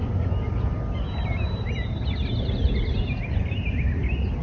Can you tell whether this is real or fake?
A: real